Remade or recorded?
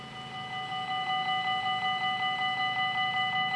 recorded